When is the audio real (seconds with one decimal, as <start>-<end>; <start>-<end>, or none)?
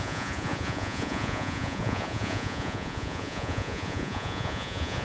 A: none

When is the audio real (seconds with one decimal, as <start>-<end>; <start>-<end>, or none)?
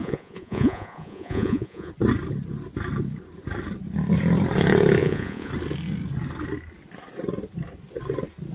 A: 1.9-5.0; 5.5-8.5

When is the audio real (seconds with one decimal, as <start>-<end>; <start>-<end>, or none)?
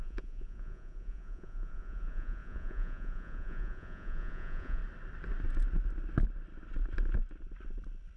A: 4.8-8.2